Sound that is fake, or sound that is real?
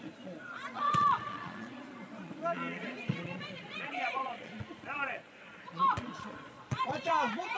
fake